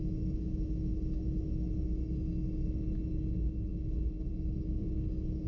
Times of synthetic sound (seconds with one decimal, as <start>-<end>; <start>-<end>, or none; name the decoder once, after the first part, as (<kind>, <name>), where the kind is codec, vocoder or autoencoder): 0.0-5.5 (autoencoder, DAC-VAE)